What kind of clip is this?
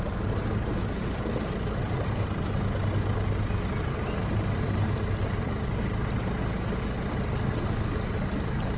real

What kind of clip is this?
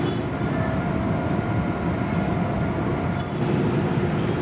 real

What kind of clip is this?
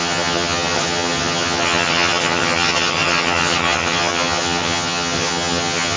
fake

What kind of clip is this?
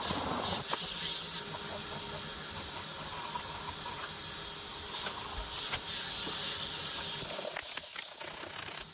real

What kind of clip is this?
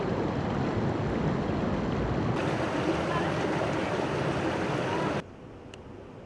real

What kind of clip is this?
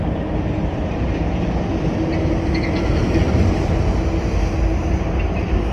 real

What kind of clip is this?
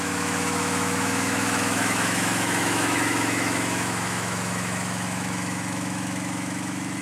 fake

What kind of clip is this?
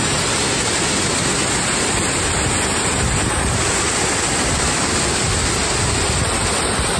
real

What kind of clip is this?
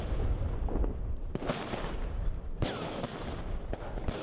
real